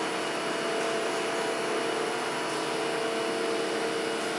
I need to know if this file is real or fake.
real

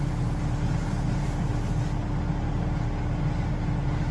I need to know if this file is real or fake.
real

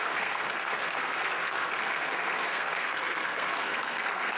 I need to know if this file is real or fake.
fake